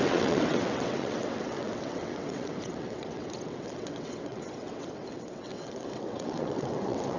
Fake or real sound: fake